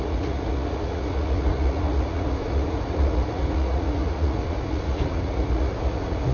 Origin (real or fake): fake